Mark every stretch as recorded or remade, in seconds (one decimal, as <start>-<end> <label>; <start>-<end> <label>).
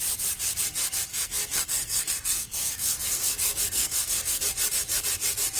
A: 0.0-1.1 recorded; 1.1-4.5 remade; 4.5-5.6 recorded